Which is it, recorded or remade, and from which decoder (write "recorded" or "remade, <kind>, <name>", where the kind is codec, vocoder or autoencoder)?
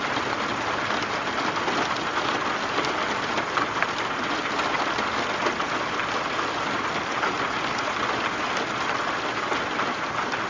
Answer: recorded